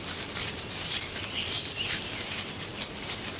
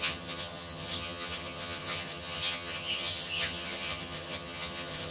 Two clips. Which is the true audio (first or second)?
first